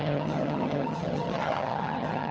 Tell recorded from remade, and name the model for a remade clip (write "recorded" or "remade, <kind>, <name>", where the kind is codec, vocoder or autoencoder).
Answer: remade, vocoder, HiFi-GAN